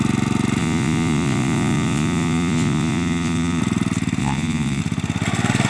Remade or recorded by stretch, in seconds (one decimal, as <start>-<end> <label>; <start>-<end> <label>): 0.0-0.6 recorded; 0.6-3.6 remade; 3.6-4.2 recorded; 4.2-4.8 remade; 4.8-5.7 recorded